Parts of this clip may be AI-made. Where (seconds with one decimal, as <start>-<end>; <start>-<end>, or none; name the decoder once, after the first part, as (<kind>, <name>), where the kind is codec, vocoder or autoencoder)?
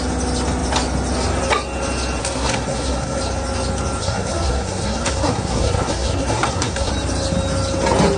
2.2-3.2 (codec, SNAC); 4.0-6.9